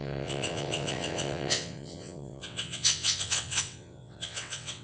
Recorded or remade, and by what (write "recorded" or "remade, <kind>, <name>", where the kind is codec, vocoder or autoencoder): remade, vocoder, WaveNeXt